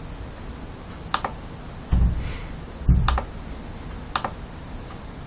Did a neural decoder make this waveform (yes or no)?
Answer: no